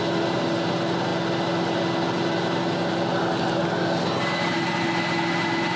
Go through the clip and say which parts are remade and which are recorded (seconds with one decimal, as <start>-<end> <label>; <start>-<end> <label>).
0.0-5.8 recorded